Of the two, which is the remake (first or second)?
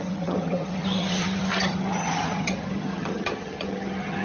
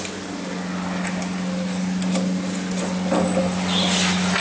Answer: first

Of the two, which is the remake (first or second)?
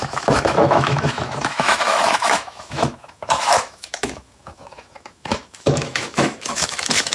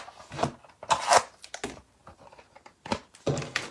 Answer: first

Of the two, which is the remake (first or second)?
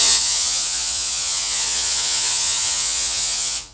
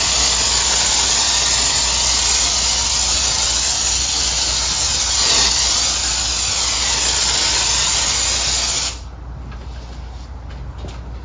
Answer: first